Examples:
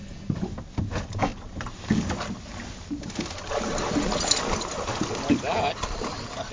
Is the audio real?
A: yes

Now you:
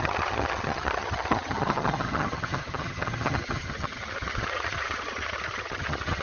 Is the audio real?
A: no